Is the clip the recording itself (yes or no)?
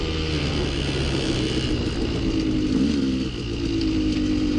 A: yes